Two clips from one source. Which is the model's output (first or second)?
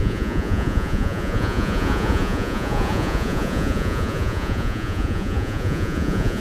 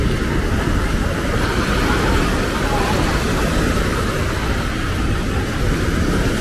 first